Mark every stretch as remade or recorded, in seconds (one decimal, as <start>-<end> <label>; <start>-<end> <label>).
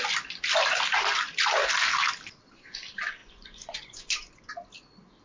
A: 0.0-3.2 recorded; 3.2-4.5 remade; 4.5-5.2 recorded